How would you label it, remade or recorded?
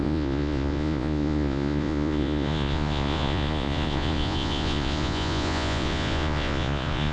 remade